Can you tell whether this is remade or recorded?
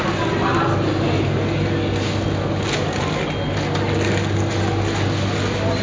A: recorded